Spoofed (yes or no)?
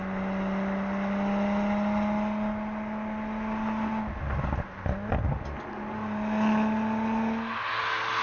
no